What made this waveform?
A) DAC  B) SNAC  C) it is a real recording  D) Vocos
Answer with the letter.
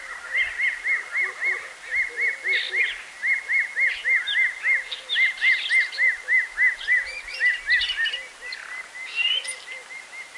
C